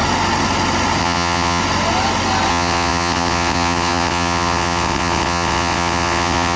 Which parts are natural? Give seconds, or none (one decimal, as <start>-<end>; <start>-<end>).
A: 0.0-1.0; 1.6-2.5